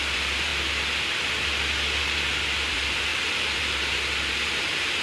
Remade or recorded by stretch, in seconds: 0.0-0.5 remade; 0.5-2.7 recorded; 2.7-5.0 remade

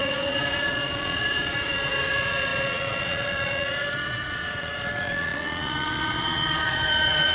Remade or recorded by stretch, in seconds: 0.0-7.3 remade

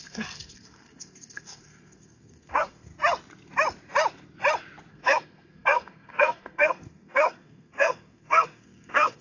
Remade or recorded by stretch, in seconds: 0.0-2.9 remade; 2.9-4.9 recorded; 4.9-9.2 remade

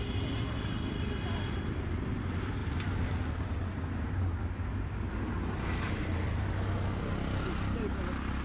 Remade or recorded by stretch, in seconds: 0.0-8.4 recorded

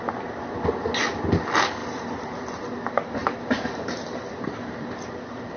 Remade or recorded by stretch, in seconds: 0.0-1.8 recorded; 1.8-2.6 remade; 2.6-3.2 recorded; 3.2-5.1 remade; 5.1-5.6 recorded

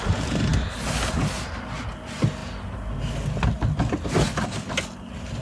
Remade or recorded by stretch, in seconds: 0.0-5.4 recorded

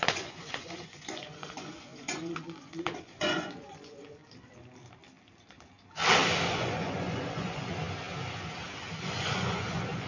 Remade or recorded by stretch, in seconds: 0.0-4.2 remade; 4.2-6.5 recorded; 6.5-7.7 remade; 7.7-9.0 recorded; 9.0-10.1 remade